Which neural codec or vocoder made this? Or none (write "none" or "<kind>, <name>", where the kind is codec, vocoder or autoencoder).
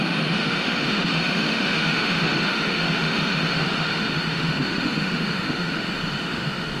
autoencoder, DAC-VAE